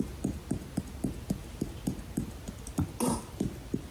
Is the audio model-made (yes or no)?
no